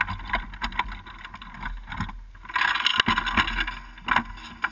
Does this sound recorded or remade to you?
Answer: recorded